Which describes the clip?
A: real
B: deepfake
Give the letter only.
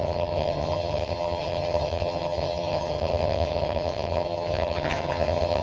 B